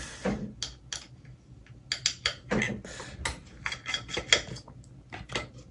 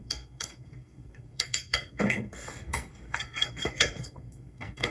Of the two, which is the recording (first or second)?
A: first